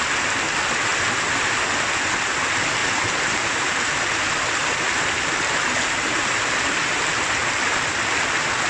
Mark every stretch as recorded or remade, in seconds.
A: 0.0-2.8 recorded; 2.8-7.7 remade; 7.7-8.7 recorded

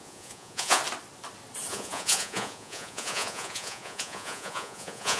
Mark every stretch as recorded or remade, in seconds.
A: 0.0-0.8 remade; 0.8-1.7 recorded; 1.7-5.2 remade

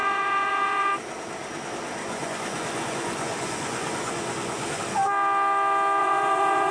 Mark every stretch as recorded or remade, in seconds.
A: 0.0-0.9 remade; 0.9-2.0 recorded; 2.0-4.8 remade; 4.8-6.0 recorded; 6.0-6.7 remade

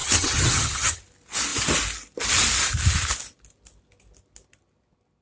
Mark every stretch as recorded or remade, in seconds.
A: 0.0-1.0 remade; 1.0-5.2 recorded

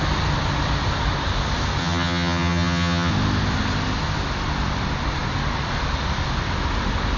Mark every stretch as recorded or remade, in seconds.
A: 0.0-1.8 recorded; 1.8-3.1 remade; 3.1-7.2 recorded

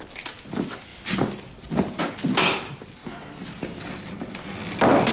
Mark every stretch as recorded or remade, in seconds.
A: 0.0-3.0 recorded; 3.0-3.8 remade; 3.8-5.1 recorded

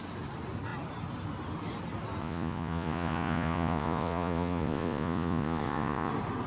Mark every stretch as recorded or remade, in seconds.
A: 0.0-2.2 recorded; 2.2-6.1 remade; 6.1-6.5 recorded

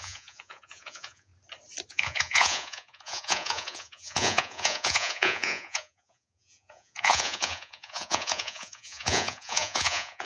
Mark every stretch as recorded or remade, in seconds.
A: 0.0-1.3 remade; 1.3-1.9 recorded; 1.9-10.3 remade